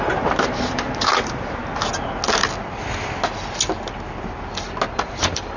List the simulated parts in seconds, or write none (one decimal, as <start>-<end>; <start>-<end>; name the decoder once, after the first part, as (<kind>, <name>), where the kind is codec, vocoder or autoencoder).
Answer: 0.0-1.6 (vocoder, BigVGAN v2); 5.0-5.6